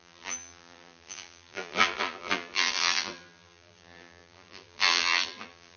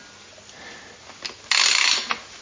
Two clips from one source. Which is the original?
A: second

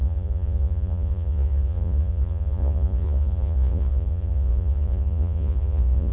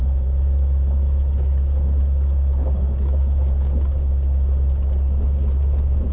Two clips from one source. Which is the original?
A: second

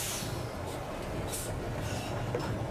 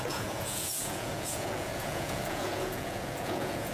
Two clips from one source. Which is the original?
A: first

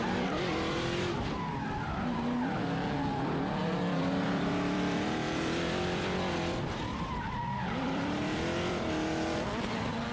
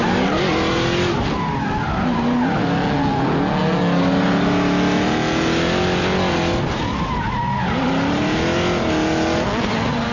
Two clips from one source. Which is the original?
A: second